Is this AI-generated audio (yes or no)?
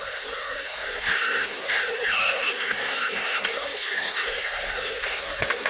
yes